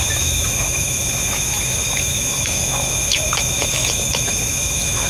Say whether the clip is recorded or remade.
remade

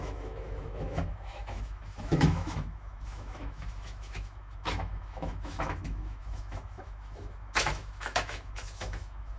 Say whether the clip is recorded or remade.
remade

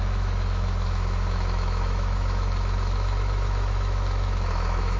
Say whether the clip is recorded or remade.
remade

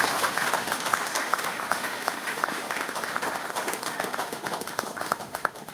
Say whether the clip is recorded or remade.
remade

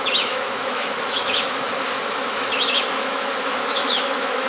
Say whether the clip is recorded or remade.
remade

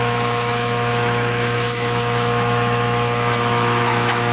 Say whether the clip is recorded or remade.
remade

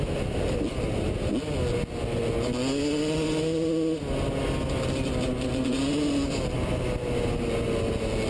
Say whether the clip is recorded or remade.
recorded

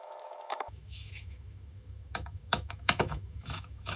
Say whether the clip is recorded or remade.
remade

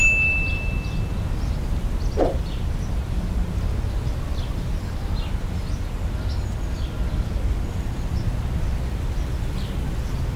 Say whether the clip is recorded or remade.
recorded